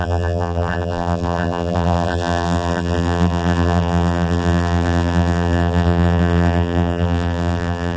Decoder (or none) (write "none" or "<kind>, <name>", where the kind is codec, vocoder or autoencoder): vocoder, BigVGAN v2